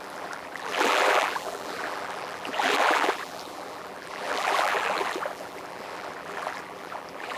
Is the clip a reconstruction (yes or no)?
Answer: yes